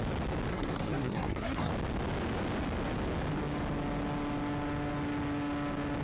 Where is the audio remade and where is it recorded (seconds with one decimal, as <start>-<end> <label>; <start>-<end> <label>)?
0.0-0.5 recorded; 0.5-1.7 remade; 1.7-6.0 recorded